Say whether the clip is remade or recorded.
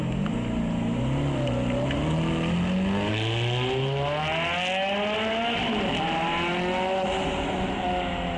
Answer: recorded